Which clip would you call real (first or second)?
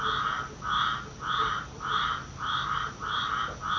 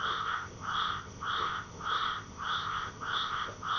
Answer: first